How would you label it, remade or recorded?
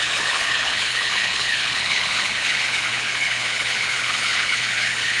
remade